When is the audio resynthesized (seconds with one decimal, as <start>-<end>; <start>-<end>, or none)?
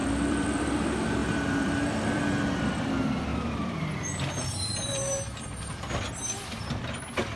0.0-0.6; 1.2-2.2; 3.3-6.0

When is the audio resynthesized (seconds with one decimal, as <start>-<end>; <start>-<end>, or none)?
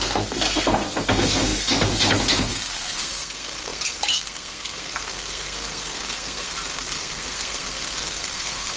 0.0-8.8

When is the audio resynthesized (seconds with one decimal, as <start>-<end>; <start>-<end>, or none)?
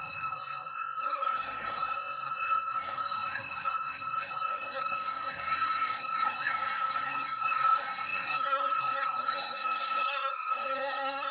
0.0-11.3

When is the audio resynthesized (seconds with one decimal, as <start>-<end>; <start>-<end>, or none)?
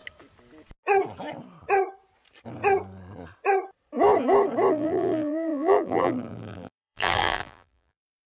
4.7-8.3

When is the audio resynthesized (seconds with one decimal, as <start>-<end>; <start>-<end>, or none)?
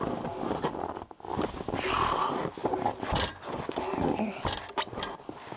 none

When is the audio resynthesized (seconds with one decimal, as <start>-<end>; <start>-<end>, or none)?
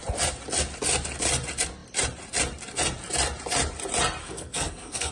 4.2-5.1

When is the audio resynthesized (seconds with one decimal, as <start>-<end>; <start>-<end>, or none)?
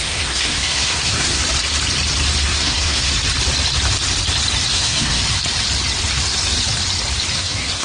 0.0-1.4; 2.4-3.1; 4.7-5.2; 7.3-7.8